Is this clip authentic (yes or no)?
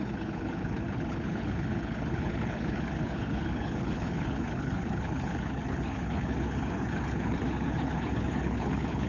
no